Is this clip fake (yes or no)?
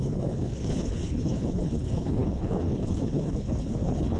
yes